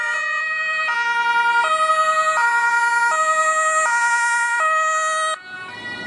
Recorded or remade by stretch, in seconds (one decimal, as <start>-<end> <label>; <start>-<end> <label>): 0.0-6.1 recorded